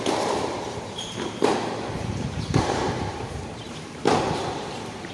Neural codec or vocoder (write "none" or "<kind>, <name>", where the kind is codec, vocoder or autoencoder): vocoder, BigVGAN v2